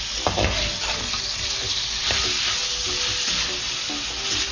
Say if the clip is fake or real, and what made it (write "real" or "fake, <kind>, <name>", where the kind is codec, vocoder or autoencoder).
real